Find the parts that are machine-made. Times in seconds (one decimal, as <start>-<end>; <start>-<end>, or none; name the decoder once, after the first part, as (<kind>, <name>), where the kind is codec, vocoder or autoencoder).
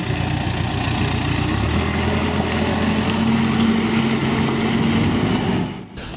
none